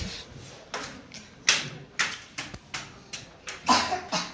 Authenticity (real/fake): real